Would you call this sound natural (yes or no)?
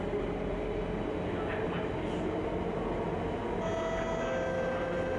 yes